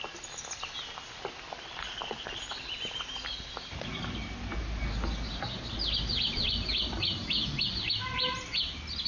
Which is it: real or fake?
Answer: real